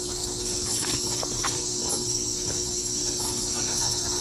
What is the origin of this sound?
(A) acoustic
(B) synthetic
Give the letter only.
B